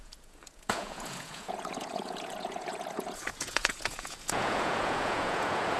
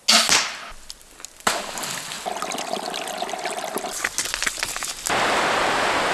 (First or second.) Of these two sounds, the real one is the second